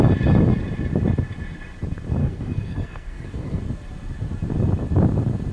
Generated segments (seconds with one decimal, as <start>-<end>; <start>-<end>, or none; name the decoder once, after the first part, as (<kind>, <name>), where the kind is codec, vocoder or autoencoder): 2.2-3.6 (codec, SNAC)